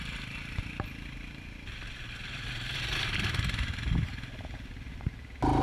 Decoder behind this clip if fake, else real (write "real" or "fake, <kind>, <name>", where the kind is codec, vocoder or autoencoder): real